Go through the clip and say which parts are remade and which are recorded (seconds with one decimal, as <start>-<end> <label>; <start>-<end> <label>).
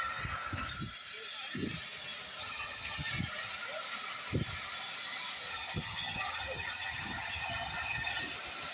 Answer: 0.0-2.4 recorded; 2.4-3.1 remade; 3.1-5.5 recorded; 5.5-8.2 remade; 8.2-8.7 recorded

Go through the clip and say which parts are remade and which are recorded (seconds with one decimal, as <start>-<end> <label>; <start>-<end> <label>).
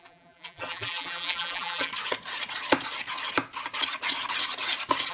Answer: 0.0-1.9 remade; 1.9-5.1 recorded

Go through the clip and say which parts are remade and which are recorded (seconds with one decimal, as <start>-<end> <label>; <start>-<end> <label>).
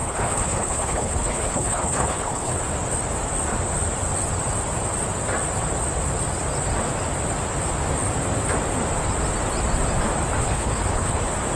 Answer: 0.0-2.6 remade; 2.6-10.4 recorded; 10.4-11.2 remade; 11.2-11.6 recorded